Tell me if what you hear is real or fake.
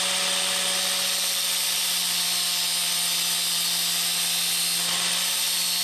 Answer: real